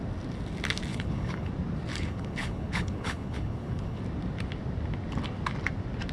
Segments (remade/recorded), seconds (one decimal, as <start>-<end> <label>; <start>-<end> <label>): 0.0-0.9 recorded; 0.9-1.5 remade; 1.5-1.9 recorded; 1.9-4.0 remade; 4.0-6.1 recorded